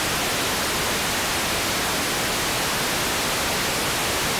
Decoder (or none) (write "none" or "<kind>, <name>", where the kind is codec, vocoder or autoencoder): none